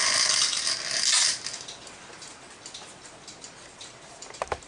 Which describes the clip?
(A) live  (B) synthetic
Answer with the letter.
A